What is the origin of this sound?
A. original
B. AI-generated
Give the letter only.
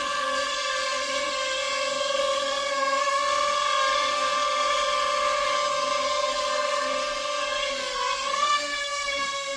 B